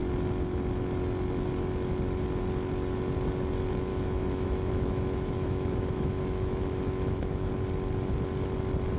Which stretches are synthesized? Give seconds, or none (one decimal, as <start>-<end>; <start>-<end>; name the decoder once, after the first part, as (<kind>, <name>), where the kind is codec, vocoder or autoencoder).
3.9-7.5 (autoencoder, DAC-VAE)

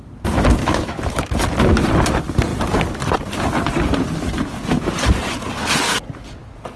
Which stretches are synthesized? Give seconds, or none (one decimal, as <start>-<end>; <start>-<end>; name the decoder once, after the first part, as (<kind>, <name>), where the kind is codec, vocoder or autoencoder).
0.6-1.3 (autoencoder, DAC-VAE)

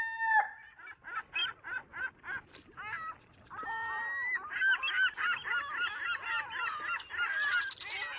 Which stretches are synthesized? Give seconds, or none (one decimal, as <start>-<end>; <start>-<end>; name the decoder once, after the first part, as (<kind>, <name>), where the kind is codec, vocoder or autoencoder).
none

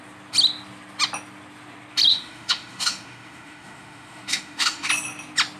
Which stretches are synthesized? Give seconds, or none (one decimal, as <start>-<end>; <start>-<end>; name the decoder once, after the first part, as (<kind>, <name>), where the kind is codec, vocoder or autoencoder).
2.1-4.9 (autoencoder, DAC-VAE)